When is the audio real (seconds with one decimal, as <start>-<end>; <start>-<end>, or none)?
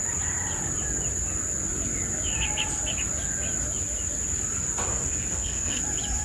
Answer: 0.0-4.9; 5.8-6.2